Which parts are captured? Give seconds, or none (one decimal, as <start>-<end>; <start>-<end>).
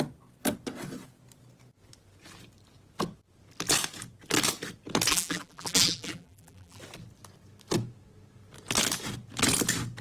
0.0-5.1; 6.8-10.0